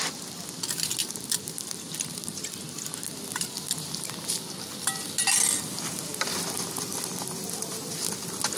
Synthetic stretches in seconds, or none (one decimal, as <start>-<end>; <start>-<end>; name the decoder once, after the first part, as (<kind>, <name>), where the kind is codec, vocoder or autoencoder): 1.0-2.4 (vocoder, BigVGAN v2)